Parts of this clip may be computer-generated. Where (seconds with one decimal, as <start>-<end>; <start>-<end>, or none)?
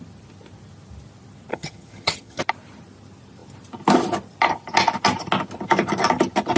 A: 1.5-2.4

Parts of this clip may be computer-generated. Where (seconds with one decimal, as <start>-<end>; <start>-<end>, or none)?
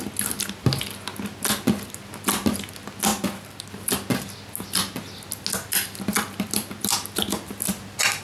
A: none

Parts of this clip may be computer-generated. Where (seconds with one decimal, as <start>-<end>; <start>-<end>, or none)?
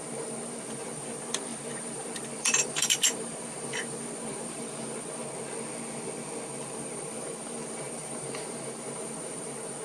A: 0.0-5.2; 6.6-9.8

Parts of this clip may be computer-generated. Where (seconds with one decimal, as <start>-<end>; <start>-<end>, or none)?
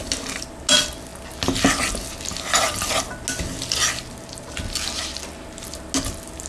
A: none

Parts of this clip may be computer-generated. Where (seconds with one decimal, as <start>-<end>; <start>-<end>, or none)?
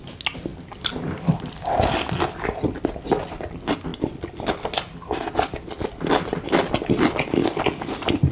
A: none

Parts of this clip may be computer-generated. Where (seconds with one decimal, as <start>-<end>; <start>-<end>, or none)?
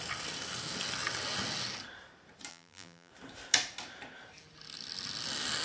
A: 2.5-3.1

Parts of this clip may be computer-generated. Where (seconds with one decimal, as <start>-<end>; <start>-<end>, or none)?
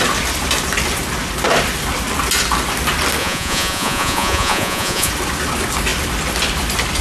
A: 3.2-5.1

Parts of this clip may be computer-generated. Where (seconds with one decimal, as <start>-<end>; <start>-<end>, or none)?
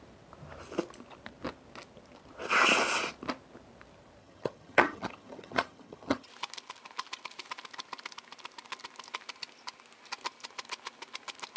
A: 4.2-6.3